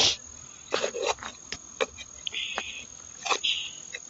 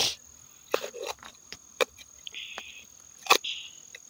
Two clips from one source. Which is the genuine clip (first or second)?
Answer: first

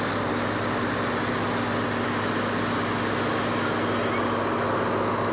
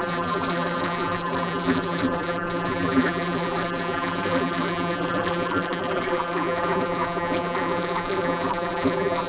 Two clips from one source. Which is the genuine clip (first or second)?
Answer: first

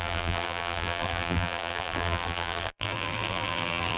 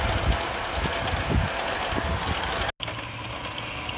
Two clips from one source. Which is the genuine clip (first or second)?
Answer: second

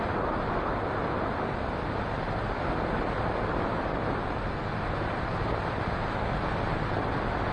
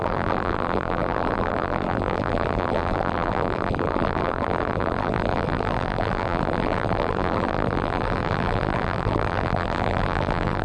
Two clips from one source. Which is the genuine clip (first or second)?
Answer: first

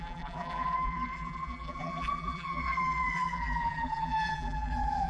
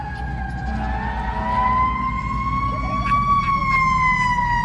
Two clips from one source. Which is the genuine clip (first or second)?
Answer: second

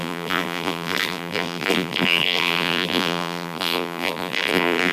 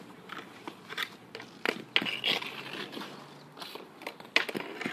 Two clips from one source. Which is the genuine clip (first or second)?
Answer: second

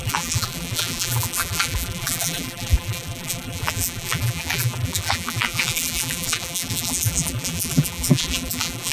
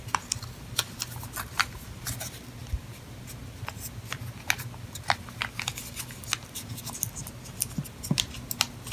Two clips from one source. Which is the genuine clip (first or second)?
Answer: second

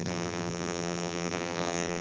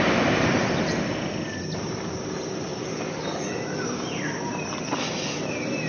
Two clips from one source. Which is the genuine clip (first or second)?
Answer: second